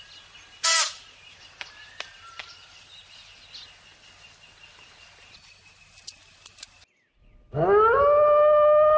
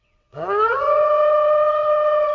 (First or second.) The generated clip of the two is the second